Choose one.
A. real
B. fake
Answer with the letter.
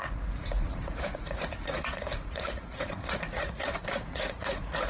B